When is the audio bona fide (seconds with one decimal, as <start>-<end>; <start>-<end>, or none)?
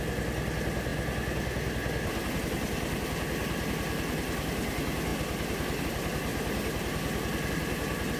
0.0-8.2